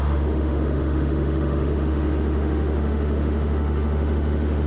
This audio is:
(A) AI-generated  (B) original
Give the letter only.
A